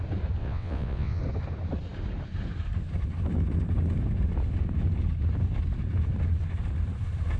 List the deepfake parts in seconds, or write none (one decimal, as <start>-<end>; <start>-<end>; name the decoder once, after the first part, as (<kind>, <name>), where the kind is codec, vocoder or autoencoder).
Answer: 0.4-1.2 (vocoder, WaveNeXt)